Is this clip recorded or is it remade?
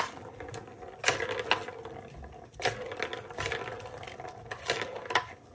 recorded